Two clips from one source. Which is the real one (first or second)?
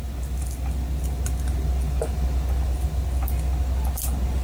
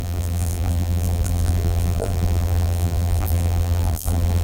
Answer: first